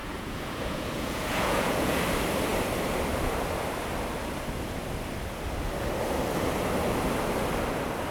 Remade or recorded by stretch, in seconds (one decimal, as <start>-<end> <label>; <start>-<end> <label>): 0.0-2.0 remade; 2.0-8.1 recorded